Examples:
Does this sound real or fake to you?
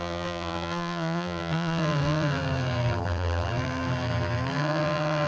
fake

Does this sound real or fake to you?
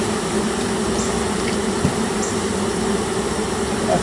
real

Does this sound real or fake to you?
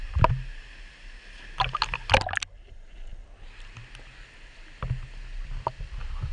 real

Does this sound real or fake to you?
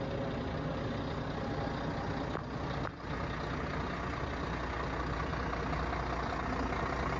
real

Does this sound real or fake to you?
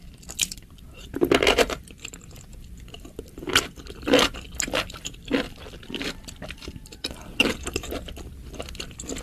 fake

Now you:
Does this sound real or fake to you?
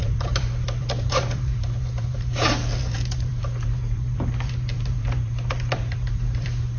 fake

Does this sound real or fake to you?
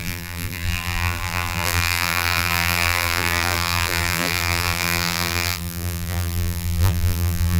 fake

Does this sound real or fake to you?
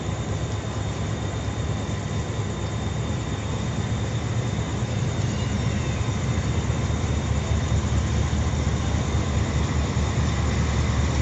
real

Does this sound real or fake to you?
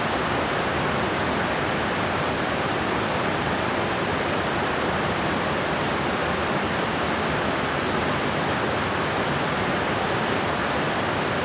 fake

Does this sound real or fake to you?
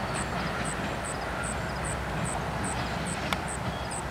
real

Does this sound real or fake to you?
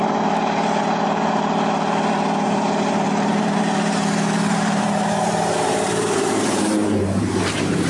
fake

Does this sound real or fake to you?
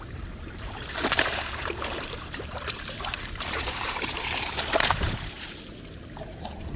fake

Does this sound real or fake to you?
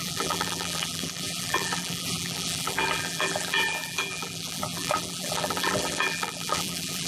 fake